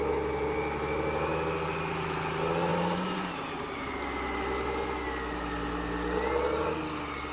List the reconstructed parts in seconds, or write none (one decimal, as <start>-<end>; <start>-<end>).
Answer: 2.7-3.9